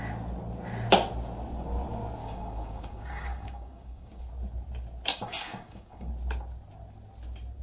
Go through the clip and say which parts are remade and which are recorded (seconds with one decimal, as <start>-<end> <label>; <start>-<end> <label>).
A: 0.0-2.2 recorded; 2.2-4.2 remade; 4.2-5.1 recorded; 5.1-6.1 remade; 6.1-7.6 recorded